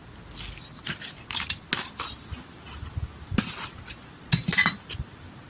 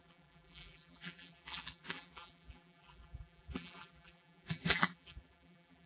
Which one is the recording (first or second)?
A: first